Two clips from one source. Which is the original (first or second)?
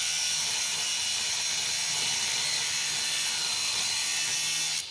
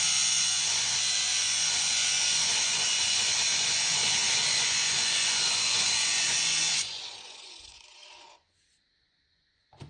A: first